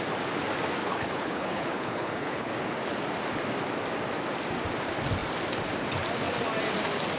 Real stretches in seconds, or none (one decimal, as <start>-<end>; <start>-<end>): 0.0-0.8; 2.5-7.2